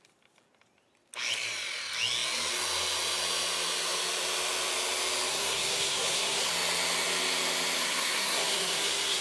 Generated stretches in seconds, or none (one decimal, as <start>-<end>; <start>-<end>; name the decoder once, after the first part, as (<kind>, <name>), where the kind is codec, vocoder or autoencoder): 5.3-6.5 (codec, SNAC); 7.8-9.2